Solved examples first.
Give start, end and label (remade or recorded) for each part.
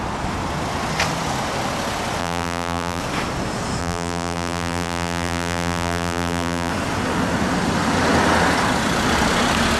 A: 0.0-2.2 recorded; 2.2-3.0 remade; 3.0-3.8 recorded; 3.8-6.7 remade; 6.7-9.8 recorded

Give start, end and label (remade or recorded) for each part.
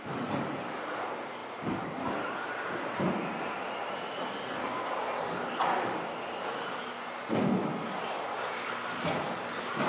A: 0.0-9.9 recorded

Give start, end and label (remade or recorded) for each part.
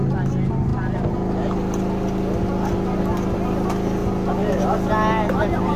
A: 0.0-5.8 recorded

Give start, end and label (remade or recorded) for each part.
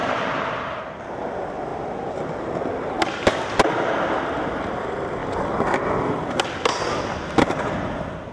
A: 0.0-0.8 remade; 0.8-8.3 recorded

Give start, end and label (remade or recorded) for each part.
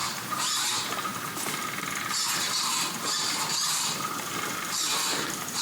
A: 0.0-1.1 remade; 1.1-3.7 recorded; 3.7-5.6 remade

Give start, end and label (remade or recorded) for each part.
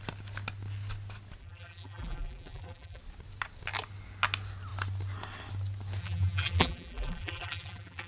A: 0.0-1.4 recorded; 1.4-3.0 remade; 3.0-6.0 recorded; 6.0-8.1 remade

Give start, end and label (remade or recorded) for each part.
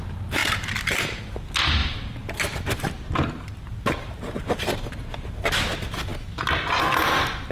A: 0.0-0.4 recorded; 0.4-1.2 remade; 1.2-1.8 recorded; 1.8-4.6 remade; 4.6-7.5 recorded